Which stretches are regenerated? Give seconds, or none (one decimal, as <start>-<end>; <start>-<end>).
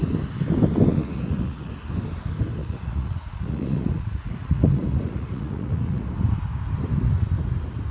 0.9-1.7; 2.6-6.1